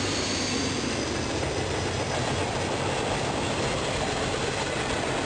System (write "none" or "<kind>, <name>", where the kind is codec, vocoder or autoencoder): none